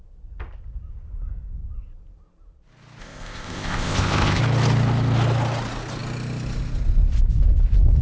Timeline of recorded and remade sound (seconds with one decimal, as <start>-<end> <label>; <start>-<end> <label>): 0.0-3.0 recorded; 3.0-4.4 remade; 4.4-8.0 recorded